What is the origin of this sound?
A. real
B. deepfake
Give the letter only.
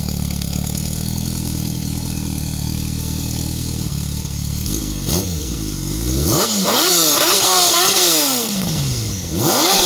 B